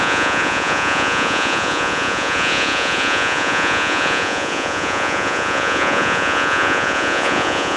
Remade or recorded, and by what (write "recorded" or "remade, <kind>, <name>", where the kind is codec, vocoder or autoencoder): remade, vocoder, Vocos